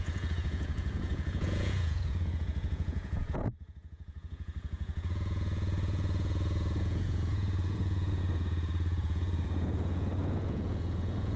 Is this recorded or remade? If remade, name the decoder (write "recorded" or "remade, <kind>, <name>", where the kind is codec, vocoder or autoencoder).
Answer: remade, vocoder, Vocos